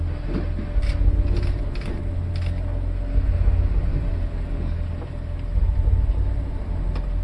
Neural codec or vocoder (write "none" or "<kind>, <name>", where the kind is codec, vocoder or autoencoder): none